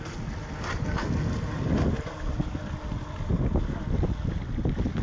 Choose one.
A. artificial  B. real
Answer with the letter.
B